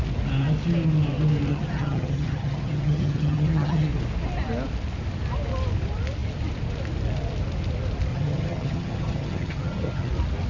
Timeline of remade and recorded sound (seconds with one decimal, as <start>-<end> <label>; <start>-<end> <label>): 0.0-1.5 recorded; 1.5-3.9 remade; 3.9-8.1 recorded; 8.1-10.1 remade; 10.1-10.5 recorded